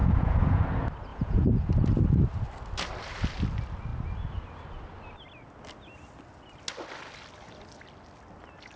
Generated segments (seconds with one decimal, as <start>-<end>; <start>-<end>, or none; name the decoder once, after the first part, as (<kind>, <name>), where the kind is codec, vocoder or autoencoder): 0.0-0.6 (vocoder, Vocos); 1.1-1.7